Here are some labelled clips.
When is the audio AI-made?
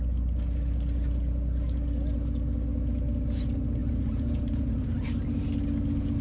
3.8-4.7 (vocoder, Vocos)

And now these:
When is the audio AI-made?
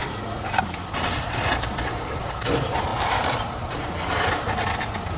0.0-2.4 (vocoder, BigVGAN v2); 2.9-3.9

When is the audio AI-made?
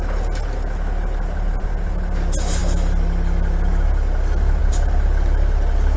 none